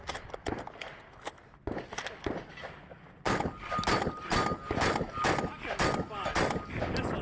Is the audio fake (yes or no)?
no